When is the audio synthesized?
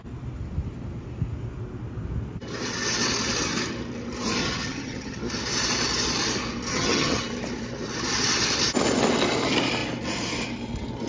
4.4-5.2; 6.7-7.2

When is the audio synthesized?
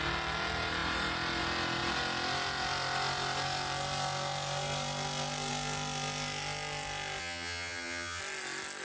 7.2-8.2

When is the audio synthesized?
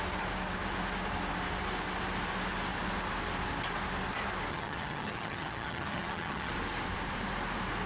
4.5-6.5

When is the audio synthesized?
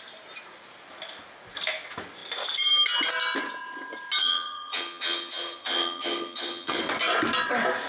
4.2-6.8